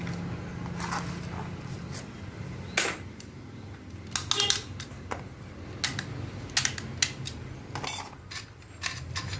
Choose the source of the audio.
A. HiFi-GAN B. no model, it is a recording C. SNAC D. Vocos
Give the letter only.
B